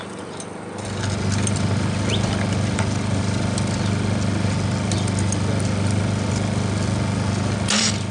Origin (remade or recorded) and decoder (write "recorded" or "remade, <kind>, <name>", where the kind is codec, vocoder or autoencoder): recorded